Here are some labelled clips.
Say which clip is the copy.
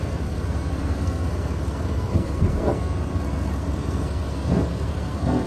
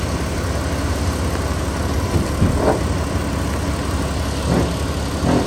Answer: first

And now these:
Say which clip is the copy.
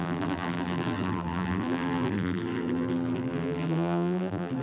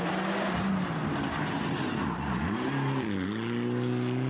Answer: first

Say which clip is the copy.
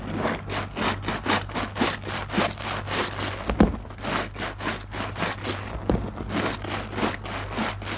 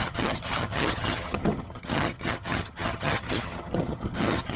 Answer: second